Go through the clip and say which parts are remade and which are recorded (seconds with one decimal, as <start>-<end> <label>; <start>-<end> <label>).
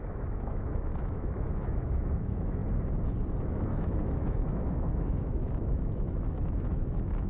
0.0-2.6 remade; 2.6-3.5 recorded; 3.5-7.3 remade